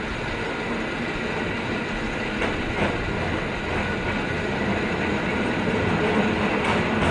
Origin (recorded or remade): recorded